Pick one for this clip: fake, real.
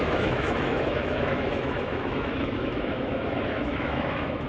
fake